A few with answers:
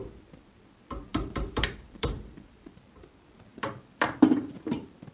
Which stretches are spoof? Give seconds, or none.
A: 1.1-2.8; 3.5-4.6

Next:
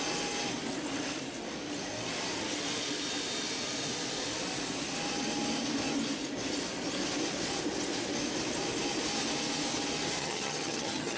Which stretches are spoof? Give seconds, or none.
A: 10.2-11.2

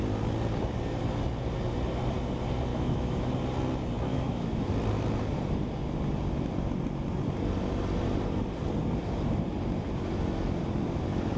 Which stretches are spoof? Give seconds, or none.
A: 2.7-3.3; 4.1-4.7

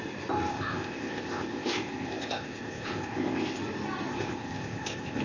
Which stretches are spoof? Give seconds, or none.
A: 0.5-3.6; 4.1-5.2

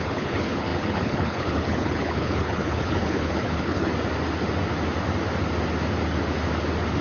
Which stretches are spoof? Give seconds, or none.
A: 0.0-3.9

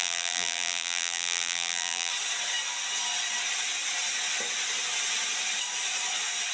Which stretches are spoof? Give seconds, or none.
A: 0.0-2.1

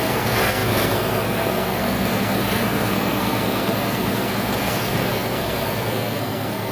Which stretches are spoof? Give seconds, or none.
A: 0.0-6.7

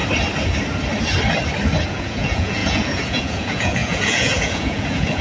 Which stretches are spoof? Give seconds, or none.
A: 1.9-5.2